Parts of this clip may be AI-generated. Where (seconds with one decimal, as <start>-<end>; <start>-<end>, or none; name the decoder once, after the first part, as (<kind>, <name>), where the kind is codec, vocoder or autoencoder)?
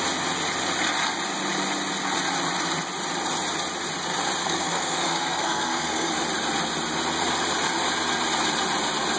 4.4-6.1 (codec, SNAC)